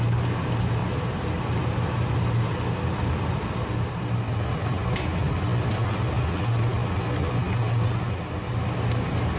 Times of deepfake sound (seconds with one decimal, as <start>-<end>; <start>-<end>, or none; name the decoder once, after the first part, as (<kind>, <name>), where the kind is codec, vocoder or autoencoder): none